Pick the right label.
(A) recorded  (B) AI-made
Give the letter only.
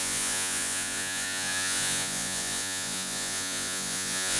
B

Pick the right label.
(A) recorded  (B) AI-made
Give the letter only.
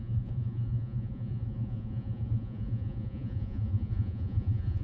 B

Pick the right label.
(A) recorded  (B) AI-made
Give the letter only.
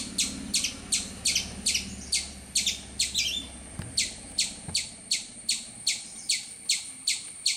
A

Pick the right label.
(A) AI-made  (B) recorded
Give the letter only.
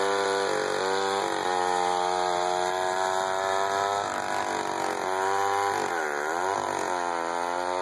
B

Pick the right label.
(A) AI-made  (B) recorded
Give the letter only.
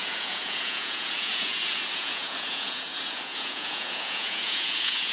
A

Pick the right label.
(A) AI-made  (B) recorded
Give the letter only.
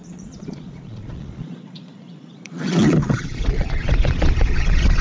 A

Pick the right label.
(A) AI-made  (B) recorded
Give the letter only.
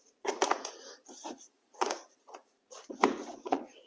A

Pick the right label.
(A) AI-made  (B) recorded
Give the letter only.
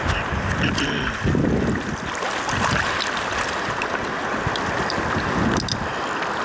B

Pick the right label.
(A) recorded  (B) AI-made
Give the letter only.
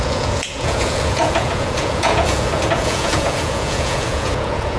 B